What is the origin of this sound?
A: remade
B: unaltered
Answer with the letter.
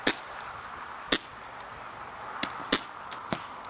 B